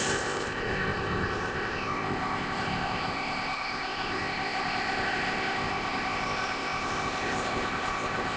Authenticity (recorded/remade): remade